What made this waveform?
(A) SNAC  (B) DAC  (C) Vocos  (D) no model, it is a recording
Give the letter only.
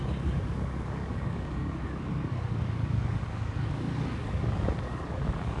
B